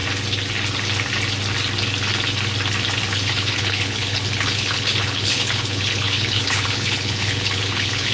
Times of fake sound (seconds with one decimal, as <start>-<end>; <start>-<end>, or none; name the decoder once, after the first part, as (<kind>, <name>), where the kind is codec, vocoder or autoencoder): 3.0-8.1 (codec, HILCodec)

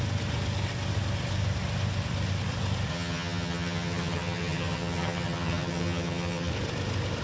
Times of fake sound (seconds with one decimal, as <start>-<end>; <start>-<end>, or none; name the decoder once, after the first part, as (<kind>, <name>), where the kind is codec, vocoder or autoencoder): 2.9-6.5 (vocoder, HiFi-GAN)

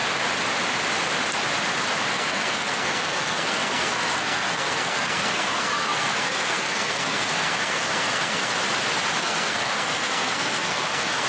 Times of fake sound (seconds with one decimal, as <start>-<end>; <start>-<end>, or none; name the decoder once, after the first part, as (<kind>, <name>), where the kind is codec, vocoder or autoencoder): 2.1-8.5 (codec, SNAC); 9.2-11.3

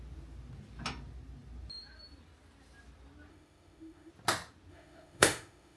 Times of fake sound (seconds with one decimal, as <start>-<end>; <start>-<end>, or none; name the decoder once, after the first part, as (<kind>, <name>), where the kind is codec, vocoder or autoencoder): 3.3-4.1 (autoencoder, DAC-VAE); 4.7-5.8

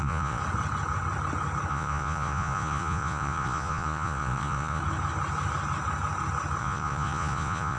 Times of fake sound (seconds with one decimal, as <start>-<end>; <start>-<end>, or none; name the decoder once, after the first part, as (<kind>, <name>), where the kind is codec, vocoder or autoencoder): 0.0-0.4 (vocoder, Vocos); 1.7-4.8; 6.6-7.8

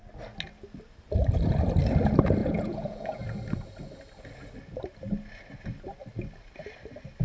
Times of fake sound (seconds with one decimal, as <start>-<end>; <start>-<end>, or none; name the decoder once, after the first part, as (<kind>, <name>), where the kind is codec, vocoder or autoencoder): 2.4-3.2 (vocoder, Vocos)

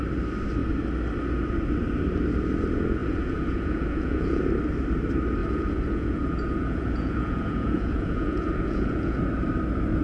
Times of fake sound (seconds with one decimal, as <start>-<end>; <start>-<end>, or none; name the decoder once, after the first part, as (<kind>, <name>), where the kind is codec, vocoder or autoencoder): 3.0-4.4 (vocoder, Vocos); 5.4-9.2

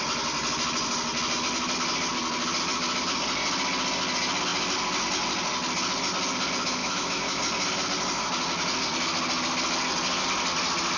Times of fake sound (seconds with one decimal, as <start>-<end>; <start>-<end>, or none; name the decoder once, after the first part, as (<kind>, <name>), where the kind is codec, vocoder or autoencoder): 6.8-7.4 (autoencoder, DAC-VAE)